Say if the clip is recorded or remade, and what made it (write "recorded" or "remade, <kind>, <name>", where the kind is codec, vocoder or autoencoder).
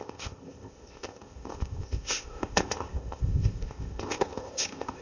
remade, codec, ZipCodec